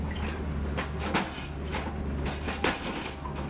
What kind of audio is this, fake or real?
real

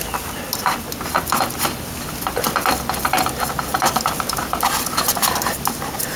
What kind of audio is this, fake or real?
real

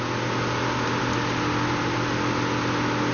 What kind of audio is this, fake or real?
real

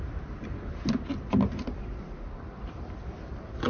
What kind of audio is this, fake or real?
real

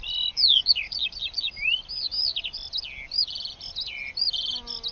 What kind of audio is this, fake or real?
real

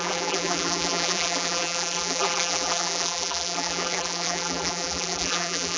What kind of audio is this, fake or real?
fake